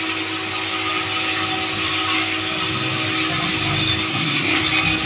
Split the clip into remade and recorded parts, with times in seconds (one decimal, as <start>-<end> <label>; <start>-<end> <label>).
0.0-4.1 recorded; 4.1-4.6 remade; 4.6-5.1 recorded